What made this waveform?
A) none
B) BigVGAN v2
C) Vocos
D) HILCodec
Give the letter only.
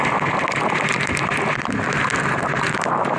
A